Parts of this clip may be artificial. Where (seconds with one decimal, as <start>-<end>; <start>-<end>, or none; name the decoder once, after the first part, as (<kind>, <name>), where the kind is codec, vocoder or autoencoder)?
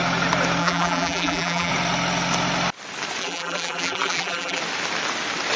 0.6-1.7 (vocoder, BigVGAN v2); 3.2-4.6